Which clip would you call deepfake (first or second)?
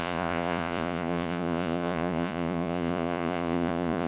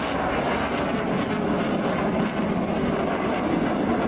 first